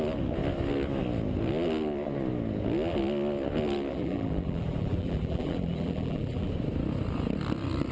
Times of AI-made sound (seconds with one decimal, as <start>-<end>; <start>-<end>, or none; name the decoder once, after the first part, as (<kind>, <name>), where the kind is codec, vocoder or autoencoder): 3.9-6.5 (vocoder, BigVGAN v2)